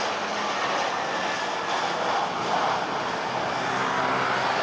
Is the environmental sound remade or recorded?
recorded